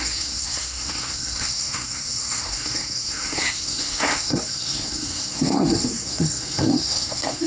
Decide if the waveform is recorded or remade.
remade